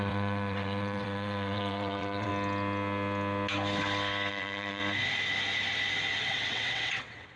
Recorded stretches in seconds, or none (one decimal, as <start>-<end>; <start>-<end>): 2.3-4.3; 4.8-6.2

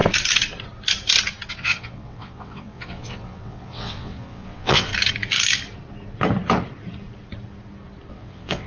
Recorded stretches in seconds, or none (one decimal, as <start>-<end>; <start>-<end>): 0.0-1.5; 4.9-8.1

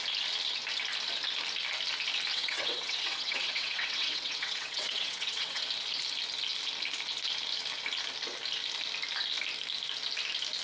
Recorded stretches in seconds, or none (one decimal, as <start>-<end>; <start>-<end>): 0.0-2.3; 5.6-10.6

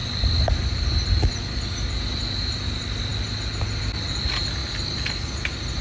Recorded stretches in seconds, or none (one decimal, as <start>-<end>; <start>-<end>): 0.0-5.8

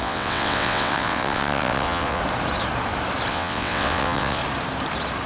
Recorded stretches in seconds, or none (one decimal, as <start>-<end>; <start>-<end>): 2.2-3.3; 4.4-5.3